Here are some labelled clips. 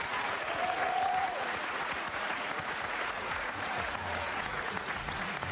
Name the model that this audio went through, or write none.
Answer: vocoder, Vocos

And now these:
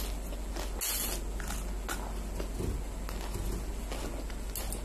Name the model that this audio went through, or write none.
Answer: none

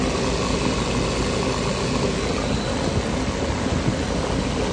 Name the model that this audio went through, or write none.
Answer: none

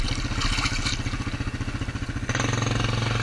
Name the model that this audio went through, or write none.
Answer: none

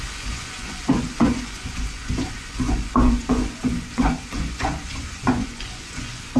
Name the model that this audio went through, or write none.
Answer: vocoder, Vocos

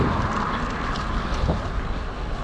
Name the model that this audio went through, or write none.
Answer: none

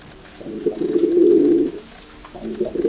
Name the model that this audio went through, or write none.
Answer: none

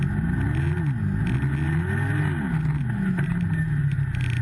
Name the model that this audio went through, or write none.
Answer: none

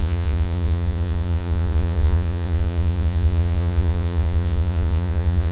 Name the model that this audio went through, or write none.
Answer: vocoder, Vocos